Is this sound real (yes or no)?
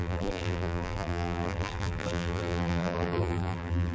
no